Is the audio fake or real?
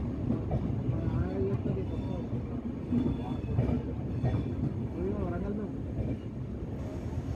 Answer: real